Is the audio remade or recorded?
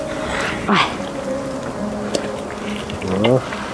recorded